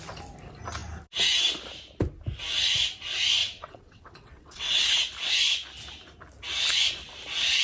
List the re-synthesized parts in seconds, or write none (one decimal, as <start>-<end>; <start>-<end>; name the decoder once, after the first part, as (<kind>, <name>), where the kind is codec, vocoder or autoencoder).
3.4-4.8 (vocoder, WaveNeXt)